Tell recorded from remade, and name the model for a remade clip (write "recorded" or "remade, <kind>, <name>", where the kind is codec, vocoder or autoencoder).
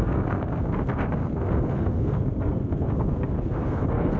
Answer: remade, codec, SNAC